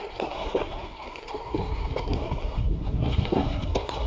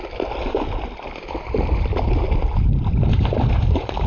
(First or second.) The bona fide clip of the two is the second